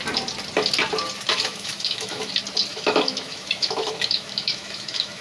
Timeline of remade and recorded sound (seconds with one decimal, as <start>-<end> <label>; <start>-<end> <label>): 0.0-1.3 recorded; 1.3-2.3 remade; 2.3-2.7 recorded; 2.7-5.2 remade